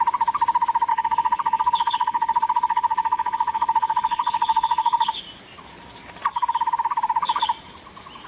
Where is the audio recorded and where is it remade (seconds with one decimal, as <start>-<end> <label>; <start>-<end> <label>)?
0.0-0.9 recorded; 0.9-5.1 remade; 5.1-8.3 recorded